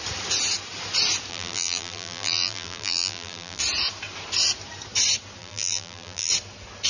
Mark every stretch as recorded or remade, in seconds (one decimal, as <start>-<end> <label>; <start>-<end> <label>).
0.0-1.3 recorded; 1.3-3.6 remade; 3.6-5.4 recorded; 5.4-6.3 remade; 6.3-6.9 recorded